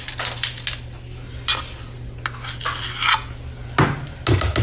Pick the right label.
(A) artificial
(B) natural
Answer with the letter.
B